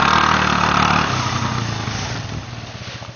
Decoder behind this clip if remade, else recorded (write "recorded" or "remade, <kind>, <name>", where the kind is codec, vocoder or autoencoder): recorded